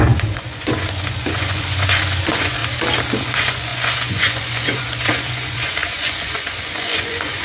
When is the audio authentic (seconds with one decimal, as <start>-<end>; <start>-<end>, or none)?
2.6-3.2